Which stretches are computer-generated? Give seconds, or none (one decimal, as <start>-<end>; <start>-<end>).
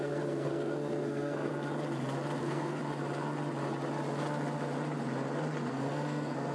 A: 0.0-1.5; 2.4-2.8; 5.7-6.5